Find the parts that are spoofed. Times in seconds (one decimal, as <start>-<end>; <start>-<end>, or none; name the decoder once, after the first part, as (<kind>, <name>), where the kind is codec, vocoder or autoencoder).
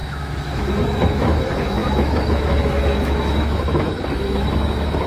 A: 0.0-5.1 (autoencoder, DAC-VAE)